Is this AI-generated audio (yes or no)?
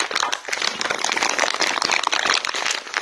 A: no